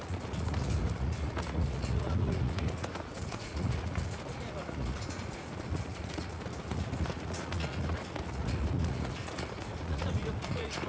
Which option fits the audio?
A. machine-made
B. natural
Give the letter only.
A